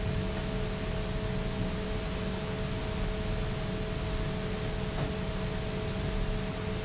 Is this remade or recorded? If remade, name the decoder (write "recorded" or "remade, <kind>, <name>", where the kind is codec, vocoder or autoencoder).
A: recorded